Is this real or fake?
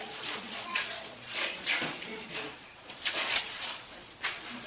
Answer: fake